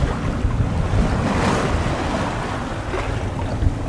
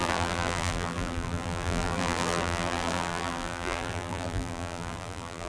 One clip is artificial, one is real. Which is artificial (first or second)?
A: second